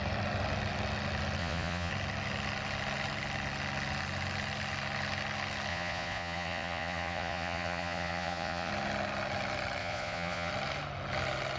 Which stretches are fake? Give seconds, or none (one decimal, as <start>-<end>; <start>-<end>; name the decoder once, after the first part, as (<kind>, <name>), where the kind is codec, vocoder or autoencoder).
1.4-1.9 (vocoder, Vocos); 5.7-8.7; 9.8-10.5